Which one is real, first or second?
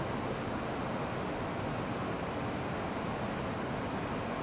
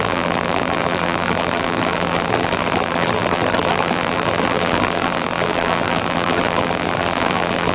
first